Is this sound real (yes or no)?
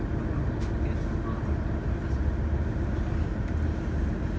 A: yes